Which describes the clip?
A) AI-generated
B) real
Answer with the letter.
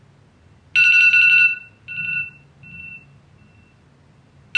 B